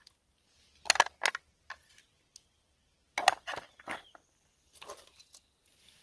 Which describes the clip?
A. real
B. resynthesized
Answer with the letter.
A